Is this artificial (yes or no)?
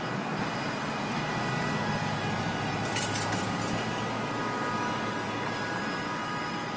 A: no